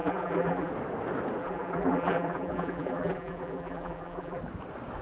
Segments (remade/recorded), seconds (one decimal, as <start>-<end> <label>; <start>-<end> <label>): 0.0-0.7 remade; 0.7-1.4 recorded; 1.4-4.4 remade; 4.4-5.0 recorded

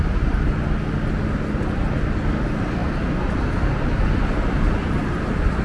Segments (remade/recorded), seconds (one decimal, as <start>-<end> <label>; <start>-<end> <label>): 0.0-5.6 recorded

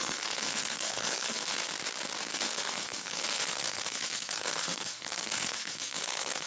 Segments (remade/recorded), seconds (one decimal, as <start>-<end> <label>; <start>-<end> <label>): 0.0-1.6 remade; 1.6-2.3 recorded; 2.3-6.5 remade